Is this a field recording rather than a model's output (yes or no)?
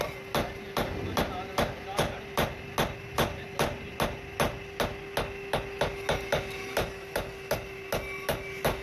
yes